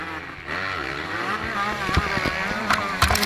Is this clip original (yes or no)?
yes